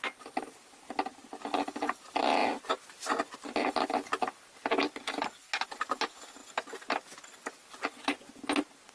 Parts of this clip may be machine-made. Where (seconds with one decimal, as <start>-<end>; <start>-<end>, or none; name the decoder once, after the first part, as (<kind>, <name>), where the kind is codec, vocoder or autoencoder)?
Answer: none